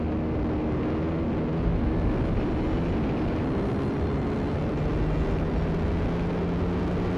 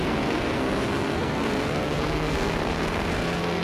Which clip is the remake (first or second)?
second